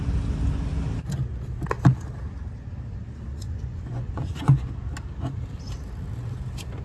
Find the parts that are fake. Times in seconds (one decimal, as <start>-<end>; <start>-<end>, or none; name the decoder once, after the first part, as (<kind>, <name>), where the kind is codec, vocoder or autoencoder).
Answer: 3.3-4.7 (vocoder, Vocos)